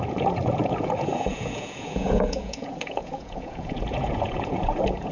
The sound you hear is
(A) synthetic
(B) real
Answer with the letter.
A